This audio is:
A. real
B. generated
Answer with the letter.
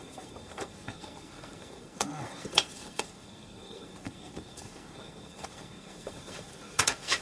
B